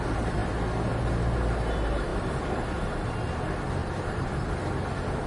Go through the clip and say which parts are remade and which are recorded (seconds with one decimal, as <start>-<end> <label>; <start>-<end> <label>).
0.0-3.8 recorded; 3.8-4.5 remade; 4.5-5.3 recorded